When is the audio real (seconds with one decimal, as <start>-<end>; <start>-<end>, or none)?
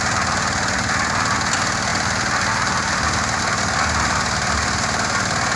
0.0-1.9; 3.4-5.6